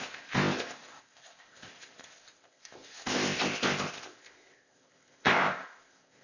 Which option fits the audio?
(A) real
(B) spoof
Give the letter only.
B